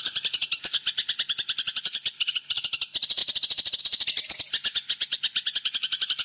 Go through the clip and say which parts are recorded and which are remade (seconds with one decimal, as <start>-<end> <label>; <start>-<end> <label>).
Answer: 0.0-6.2 recorded